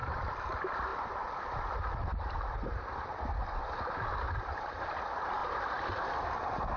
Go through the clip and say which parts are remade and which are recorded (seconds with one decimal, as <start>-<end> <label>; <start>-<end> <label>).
0.0-0.5 remade; 0.5-6.8 recorded